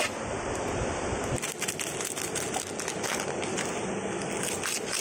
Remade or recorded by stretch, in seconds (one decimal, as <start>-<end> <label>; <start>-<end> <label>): 0.0-5.0 recorded